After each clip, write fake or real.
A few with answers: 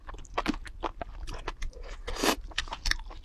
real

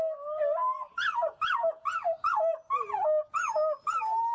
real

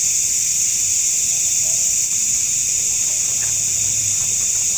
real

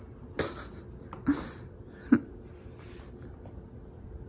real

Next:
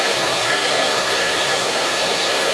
fake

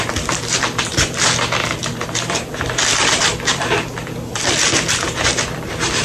fake